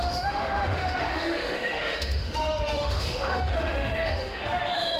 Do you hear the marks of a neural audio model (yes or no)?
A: yes